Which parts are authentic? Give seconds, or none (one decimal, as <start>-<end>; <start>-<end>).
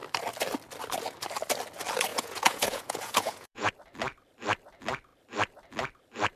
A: 0.0-2.1; 3.7-6.4